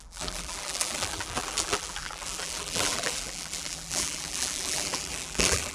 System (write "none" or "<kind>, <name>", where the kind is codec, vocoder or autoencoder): vocoder, BigVGAN v2